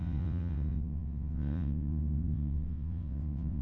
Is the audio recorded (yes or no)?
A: no